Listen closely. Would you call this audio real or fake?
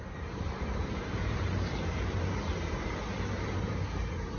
fake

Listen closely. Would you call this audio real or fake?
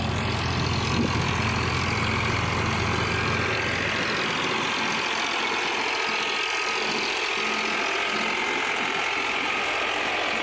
real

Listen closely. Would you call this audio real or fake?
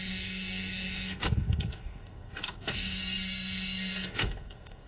fake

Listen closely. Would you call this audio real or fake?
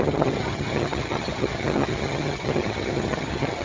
fake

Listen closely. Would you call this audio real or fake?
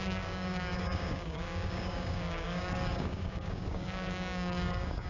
fake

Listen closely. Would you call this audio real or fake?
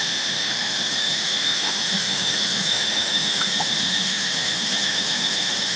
fake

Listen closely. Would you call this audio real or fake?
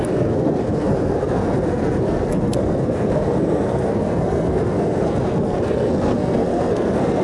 fake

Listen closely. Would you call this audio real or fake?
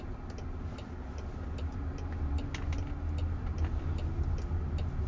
real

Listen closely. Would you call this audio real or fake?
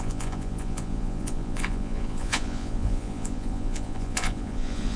fake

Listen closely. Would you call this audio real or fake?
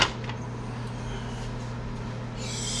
real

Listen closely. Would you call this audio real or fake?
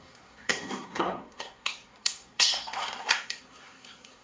fake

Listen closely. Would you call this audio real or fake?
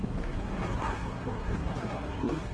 fake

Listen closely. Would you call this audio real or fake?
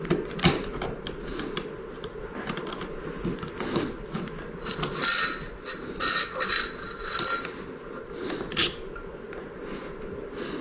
real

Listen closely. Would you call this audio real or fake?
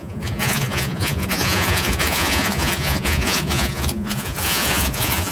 fake